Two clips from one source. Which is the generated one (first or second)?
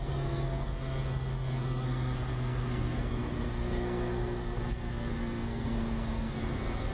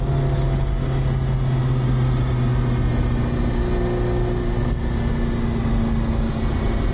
first